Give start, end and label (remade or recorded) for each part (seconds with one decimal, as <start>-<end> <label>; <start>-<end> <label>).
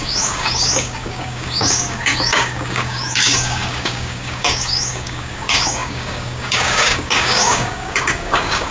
0.0-8.7 remade